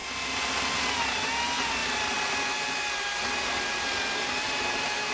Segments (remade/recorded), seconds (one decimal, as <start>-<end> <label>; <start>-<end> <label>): 0.0-5.1 recorded